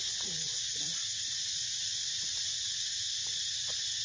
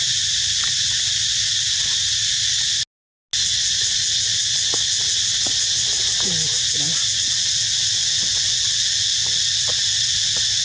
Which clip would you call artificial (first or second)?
first